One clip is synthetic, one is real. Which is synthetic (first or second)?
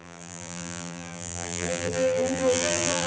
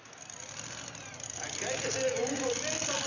first